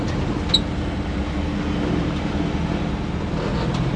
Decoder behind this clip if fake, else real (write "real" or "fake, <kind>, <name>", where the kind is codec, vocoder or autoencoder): real